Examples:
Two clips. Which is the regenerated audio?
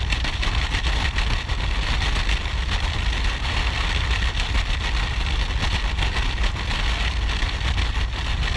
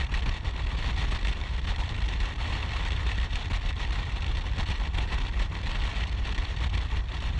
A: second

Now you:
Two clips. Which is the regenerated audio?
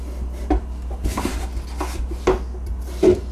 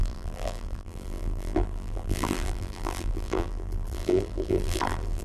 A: second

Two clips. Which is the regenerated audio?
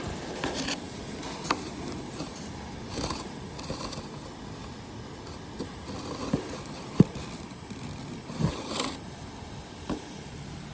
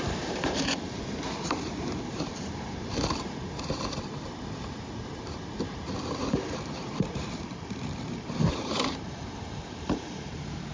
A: second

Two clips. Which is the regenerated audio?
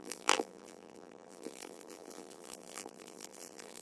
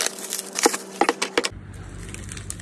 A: first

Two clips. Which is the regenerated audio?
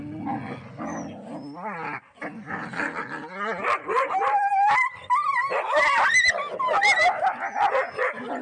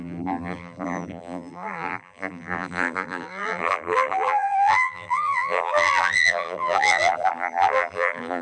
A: second